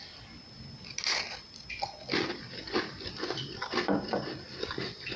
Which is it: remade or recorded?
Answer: recorded